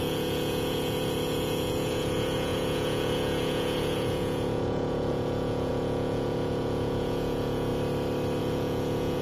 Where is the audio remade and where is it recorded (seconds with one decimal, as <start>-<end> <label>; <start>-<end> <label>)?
0.0-7.7 remade; 7.7-8.4 recorded; 8.4-9.2 remade